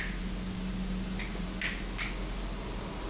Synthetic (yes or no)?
no